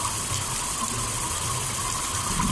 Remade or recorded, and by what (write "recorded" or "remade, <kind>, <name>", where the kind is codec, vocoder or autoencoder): recorded